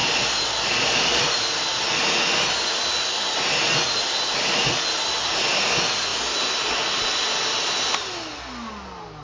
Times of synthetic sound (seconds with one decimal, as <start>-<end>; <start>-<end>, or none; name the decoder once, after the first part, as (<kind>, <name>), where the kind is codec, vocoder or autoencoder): none